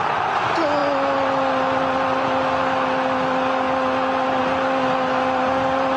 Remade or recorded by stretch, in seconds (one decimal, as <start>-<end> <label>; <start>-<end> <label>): 0.0-6.0 recorded